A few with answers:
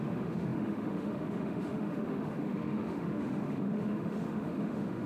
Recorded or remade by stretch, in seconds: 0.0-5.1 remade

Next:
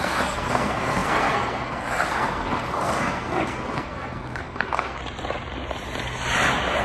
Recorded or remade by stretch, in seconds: 0.0-5.0 remade; 5.0-6.8 recorded

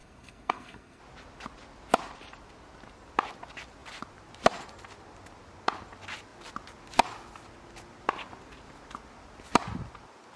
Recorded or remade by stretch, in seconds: 0.0-1.0 remade; 1.0-10.4 recorded

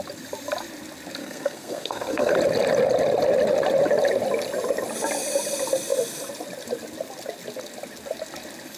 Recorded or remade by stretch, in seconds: 0.0-1.2 recorded; 1.2-2.3 remade; 2.3-8.8 recorded

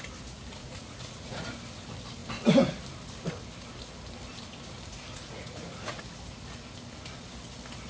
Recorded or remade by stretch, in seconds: 0.0-0.6 recorded; 0.6-1.4 remade; 1.4-5.1 recorded; 5.1-6.0 remade; 6.0-7.9 recorded

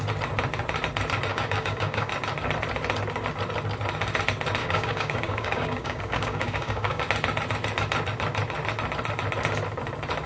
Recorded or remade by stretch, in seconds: 0.0-1.3 recorded; 1.3-2.1 remade; 2.1-4.6 recorded; 4.6-7.0 remade; 7.0-10.3 recorded

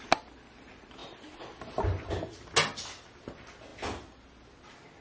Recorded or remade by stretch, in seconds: 0.0-5.0 recorded